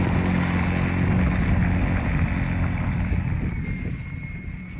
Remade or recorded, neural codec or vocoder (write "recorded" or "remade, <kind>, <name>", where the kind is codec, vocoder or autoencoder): recorded